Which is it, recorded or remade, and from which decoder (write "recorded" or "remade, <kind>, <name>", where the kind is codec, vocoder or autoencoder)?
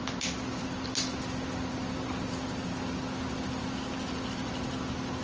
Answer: recorded